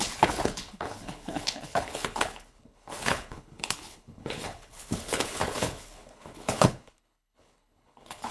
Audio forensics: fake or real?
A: fake